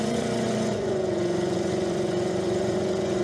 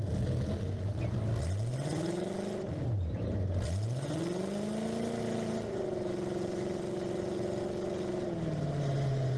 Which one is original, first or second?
second